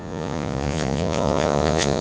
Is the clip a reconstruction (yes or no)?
yes